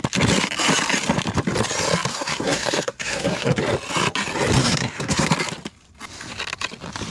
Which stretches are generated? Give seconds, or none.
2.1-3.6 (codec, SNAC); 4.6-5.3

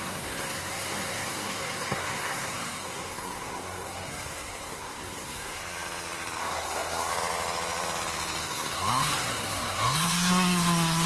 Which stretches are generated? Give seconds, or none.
0.0-5.6 (codec, SNAC); 6.4-7.1; 8.4-11.1

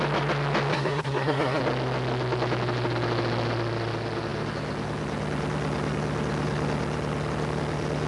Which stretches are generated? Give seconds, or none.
0.7-1.6 (codec, SNAC)

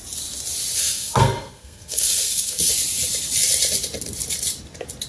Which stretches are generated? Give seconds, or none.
0.8-2.7 (codec, SNAC)

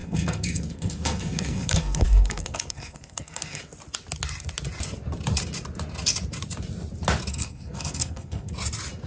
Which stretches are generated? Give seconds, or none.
0.0-3.6 (codec, SNAC); 7.3-8.5

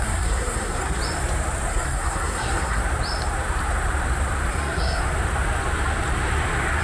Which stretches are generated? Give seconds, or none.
0.0-1.0 (codec, SNAC); 1.7-2.8; 4.5-5.0